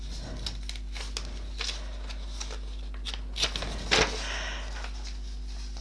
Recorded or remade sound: recorded